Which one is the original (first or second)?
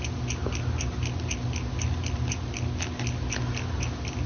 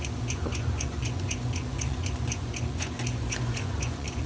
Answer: first